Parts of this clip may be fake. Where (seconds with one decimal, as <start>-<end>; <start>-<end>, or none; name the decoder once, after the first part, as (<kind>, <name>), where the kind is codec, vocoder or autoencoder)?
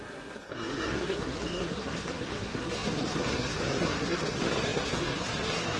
0.0-5.8 (codec, SNAC)